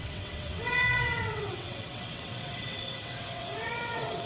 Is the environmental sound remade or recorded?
remade